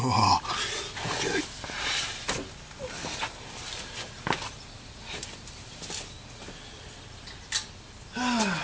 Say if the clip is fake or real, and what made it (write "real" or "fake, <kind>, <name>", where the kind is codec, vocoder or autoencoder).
real